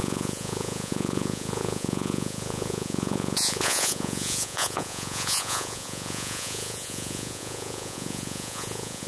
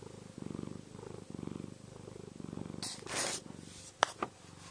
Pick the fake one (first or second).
first